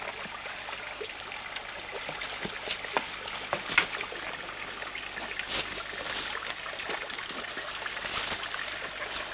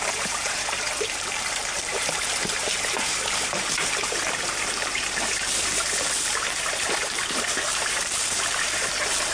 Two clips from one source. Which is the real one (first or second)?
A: first